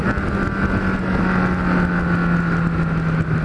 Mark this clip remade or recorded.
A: recorded